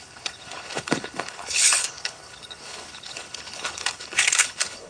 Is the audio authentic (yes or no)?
no